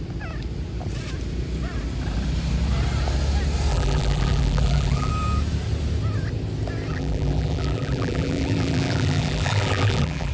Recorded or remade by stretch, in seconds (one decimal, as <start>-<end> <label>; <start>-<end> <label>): 0.0-3.7 recorded; 3.7-5.1 remade; 5.1-6.9 recorded; 6.9-10.3 remade